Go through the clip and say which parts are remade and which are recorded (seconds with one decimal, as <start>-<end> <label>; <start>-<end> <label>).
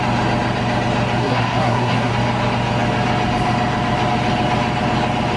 0.0-1.2 recorded; 1.2-2.1 remade; 2.1-5.4 recorded